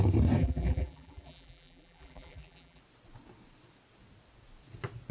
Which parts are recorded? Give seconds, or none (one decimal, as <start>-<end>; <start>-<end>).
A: 0.0-0.4; 2.8-5.1